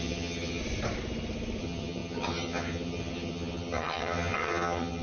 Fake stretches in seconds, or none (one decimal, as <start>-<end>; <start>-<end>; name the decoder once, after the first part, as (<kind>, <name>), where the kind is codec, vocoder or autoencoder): 0.0-0.6 (vocoder, HiFi-GAN); 1.6-5.0